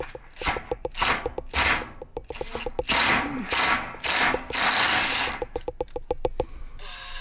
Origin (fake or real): real